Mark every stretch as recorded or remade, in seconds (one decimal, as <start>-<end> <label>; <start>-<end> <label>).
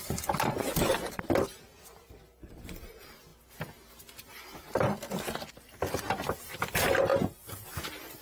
0.0-3.3 remade; 3.3-5.5 recorded; 5.5-7.1 remade; 7.1-8.2 recorded